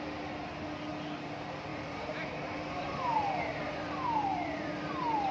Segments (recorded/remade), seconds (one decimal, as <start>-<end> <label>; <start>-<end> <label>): 0.0-1.7 recorded; 1.7-4.7 remade; 4.7-5.3 recorded